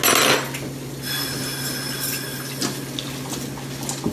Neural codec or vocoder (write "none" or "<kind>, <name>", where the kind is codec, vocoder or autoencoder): none